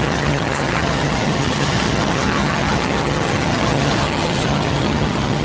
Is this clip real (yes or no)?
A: no